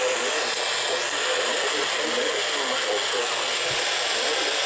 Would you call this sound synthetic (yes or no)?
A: no